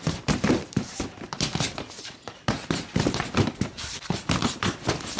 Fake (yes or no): yes